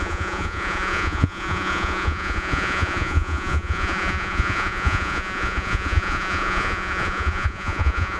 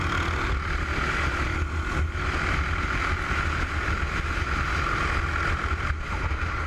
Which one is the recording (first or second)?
second